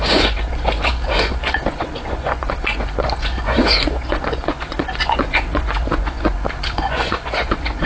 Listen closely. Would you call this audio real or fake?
fake